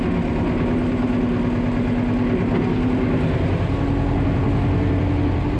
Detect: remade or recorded recorded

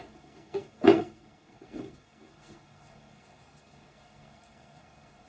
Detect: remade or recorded remade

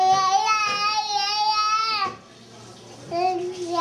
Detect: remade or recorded recorded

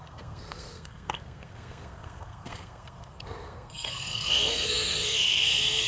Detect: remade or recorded remade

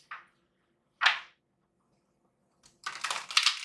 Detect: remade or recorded recorded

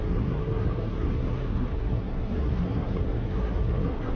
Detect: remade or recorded remade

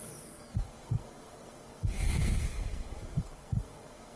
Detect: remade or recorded remade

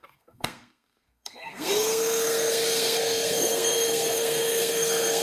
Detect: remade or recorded remade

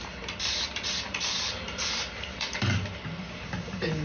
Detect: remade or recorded recorded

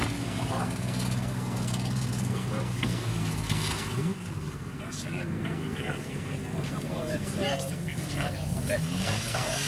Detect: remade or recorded remade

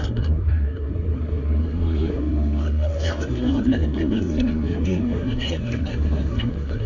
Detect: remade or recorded remade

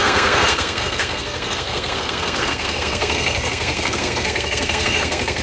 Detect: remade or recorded remade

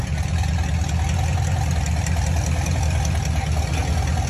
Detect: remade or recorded recorded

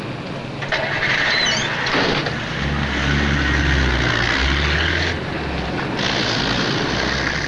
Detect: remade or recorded recorded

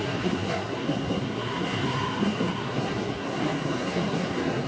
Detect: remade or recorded remade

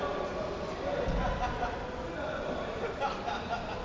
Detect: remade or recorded recorded